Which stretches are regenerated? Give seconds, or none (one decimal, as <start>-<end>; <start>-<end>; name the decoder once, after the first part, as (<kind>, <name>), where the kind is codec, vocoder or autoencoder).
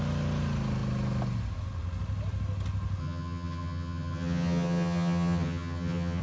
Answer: 3.0-6.2 (vocoder, HiFi-GAN)